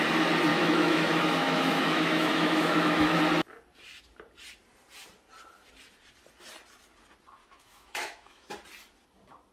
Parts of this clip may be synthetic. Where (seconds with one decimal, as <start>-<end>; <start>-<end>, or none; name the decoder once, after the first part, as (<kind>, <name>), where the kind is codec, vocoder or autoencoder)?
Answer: 0.5-3.2 (autoencoder, DAC-VAE); 7.4-8.5

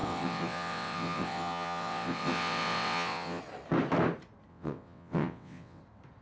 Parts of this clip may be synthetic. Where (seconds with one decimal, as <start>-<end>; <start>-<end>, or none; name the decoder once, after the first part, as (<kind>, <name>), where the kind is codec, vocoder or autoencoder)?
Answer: 0.0-3.4 (vocoder, WaveNeXt); 4.5-5.8

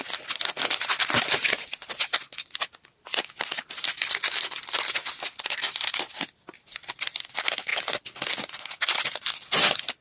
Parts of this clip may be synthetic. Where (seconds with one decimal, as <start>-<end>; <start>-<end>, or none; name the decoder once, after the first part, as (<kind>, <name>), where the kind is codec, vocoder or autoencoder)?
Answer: 0.0-10.0 (vocoder, BigVGAN v2)

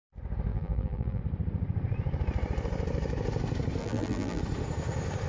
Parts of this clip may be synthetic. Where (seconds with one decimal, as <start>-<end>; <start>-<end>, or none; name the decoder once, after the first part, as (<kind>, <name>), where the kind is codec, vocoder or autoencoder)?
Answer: 0.5-1.2 (vocoder, BigVGAN v2); 3.8-4.4

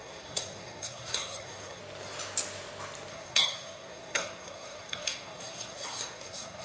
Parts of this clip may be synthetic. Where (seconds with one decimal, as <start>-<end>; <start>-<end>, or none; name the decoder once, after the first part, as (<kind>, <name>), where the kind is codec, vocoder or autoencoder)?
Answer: 0.0-1.8 (codec, SNAC); 3.1-6.6

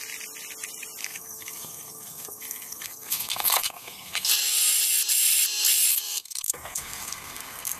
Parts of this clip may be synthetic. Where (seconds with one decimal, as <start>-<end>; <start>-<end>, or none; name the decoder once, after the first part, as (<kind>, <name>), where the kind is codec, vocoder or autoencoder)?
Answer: 1.0-4.3 (codec, SNAC); 5.9-7.8

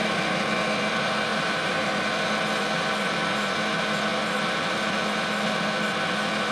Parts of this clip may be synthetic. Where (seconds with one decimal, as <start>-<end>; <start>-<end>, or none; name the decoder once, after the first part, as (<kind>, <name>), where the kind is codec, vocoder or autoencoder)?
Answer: 1.3-1.9 (vocoder, BigVGAN v2)